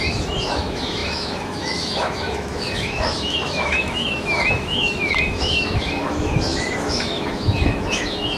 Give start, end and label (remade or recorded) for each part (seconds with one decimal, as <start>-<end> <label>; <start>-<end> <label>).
0.0-8.4 remade